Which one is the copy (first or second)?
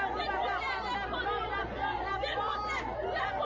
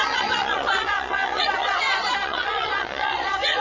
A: second